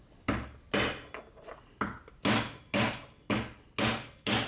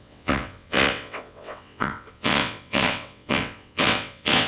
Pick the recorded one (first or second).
first